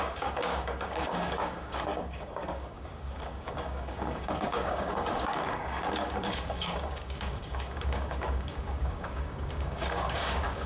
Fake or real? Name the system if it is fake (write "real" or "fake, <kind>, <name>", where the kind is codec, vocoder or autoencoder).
fake, codec, DAC